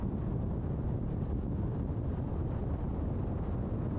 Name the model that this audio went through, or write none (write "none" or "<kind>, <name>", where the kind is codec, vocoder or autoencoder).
none